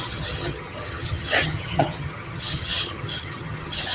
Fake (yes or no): yes